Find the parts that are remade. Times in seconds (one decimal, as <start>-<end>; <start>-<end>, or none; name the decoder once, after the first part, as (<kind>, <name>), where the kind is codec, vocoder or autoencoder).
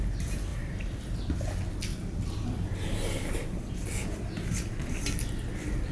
0.5-1.0 (vocoder, BigVGAN v2); 1.9-4.5